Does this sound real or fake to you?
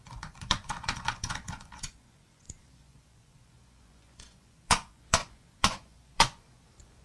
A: fake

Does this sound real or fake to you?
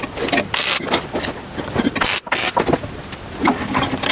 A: real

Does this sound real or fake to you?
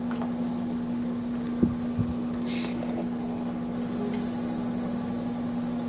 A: real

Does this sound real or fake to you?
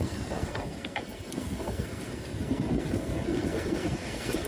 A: fake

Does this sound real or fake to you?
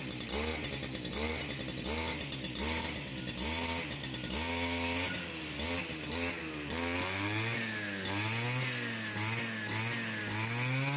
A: real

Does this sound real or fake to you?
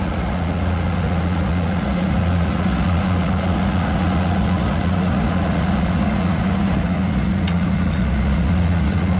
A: fake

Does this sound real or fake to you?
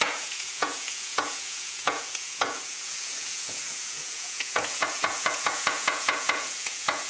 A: fake